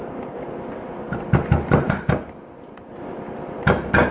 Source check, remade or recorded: recorded